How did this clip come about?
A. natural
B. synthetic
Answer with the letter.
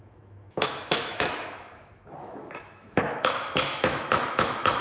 B